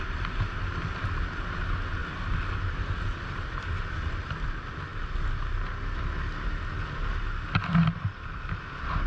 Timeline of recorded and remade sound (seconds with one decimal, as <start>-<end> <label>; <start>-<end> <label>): 0.0-9.1 recorded